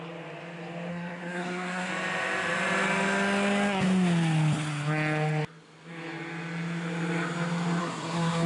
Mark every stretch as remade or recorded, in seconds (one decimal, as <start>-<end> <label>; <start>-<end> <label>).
0.0-0.9 recorded; 0.9-1.9 remade; 1.9-7.8 recorded; 7.8-8.5 remade